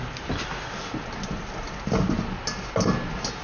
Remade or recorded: recorded